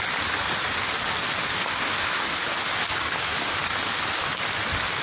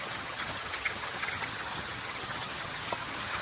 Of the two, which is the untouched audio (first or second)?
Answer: first